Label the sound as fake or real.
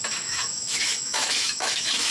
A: fake